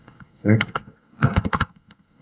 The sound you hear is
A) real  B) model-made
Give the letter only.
B